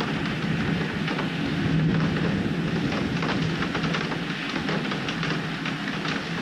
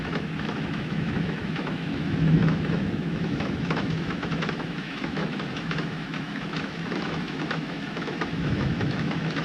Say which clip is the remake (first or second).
second